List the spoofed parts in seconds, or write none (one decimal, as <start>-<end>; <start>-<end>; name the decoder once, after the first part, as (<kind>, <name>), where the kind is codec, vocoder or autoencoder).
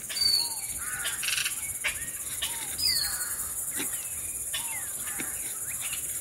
none